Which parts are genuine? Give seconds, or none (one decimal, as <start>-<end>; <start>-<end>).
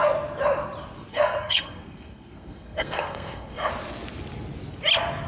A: 0.0-1.1; 3.7-5.3